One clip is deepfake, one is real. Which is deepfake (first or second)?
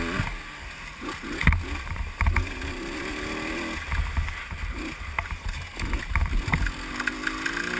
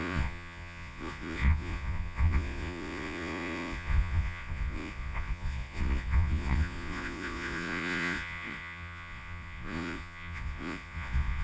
second